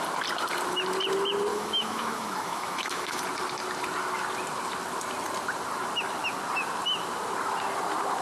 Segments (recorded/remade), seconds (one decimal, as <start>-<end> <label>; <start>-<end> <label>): 0.0-1.5 recorded; 1.5-3.2 remade; 3.2-8.2 recorded